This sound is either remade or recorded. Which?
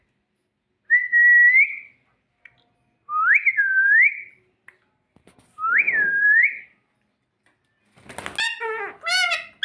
recorded